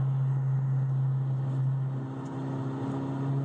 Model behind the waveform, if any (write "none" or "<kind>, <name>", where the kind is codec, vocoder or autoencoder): none